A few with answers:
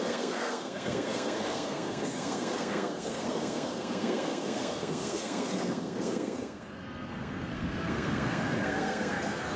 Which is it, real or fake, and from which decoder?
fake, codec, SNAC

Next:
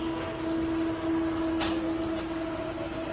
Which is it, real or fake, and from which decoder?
real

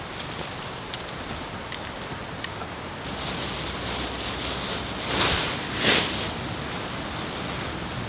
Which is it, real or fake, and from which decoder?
real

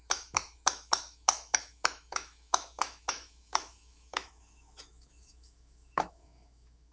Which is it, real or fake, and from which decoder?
fake, autoencoder, DAC-VAE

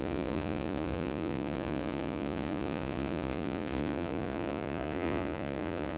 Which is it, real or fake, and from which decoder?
fake, vocoder, Vocos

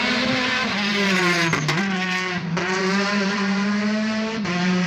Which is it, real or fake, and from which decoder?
fake, vocoder, BigVGAN v2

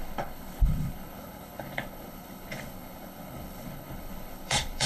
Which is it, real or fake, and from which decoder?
fake, codec, HILCodec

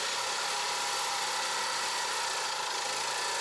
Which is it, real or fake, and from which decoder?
real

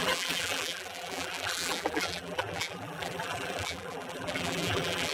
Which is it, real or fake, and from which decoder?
fake, vocoder, BigVGAN v2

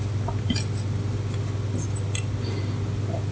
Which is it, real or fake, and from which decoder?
real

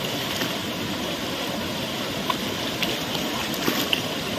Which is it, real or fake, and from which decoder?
real